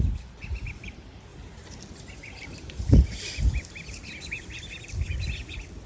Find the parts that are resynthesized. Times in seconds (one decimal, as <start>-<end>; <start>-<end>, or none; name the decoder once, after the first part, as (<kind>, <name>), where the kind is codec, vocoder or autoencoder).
none

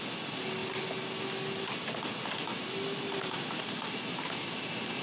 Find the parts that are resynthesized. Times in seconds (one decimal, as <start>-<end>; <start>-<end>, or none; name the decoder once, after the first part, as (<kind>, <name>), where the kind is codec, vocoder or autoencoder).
none

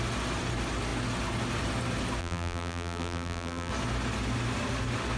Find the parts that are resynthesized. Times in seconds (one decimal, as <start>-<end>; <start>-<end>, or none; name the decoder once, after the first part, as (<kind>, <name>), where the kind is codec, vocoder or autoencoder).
2.2-3.7 (vocoder, BigVGAN v2)

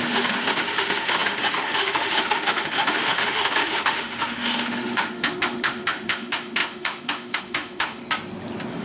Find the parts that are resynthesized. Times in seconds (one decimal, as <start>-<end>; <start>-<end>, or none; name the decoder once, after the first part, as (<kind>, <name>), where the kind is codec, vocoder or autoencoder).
0.0-8.0 (autoencoder, DAC-VAE)

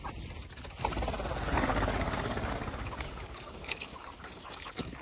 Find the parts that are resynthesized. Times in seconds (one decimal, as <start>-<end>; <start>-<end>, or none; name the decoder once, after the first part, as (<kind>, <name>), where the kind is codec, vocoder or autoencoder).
1.7-5.0 (codec, DAC)

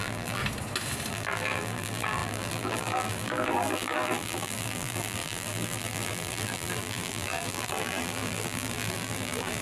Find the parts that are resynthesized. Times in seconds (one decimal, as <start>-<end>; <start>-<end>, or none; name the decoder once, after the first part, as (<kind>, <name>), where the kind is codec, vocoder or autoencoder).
0.0-0.4 (vocoder, BigVGAN v2); 1.1-9.6